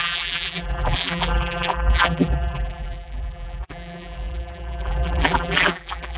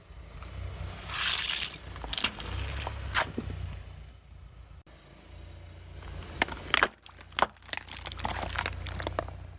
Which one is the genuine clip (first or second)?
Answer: second